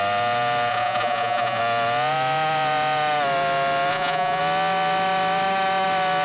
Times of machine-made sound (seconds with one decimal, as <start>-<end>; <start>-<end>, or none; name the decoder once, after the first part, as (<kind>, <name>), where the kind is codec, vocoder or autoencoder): 0.7-1.6 (vocoder, Vocos); 3.9-4.4